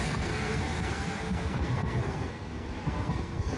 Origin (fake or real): fake